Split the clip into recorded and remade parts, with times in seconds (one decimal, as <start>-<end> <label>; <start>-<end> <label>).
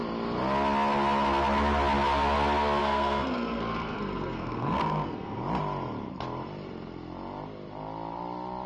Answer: 0.0-2.8 recorded; 2.8-5.4 remade; 5.4-8.7 recorded